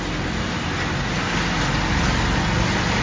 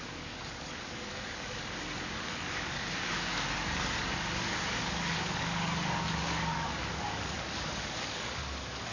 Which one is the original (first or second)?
first